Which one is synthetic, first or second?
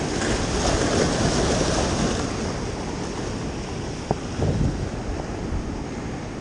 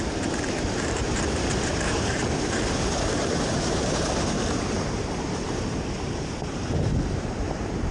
second